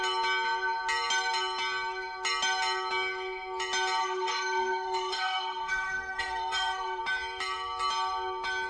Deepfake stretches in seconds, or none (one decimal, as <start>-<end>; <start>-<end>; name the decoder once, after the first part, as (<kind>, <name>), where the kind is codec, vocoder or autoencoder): 4.0-7.0 (codec, SNAC)